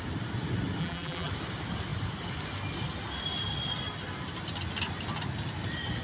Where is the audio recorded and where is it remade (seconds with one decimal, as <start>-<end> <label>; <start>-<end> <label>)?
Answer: 0.0-0.8 recorded; 0.8-1.3 remade; 1.3-6.0 recorded